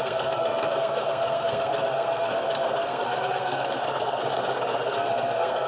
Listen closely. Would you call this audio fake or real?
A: fake